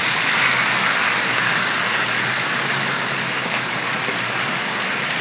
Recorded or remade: remade